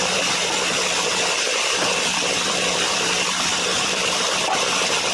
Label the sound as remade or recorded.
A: remade